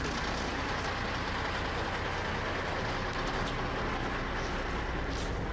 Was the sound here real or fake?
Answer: real